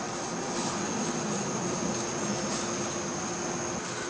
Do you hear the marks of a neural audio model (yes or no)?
no